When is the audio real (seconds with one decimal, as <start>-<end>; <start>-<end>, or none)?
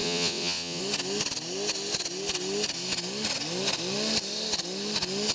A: 0.8-5.3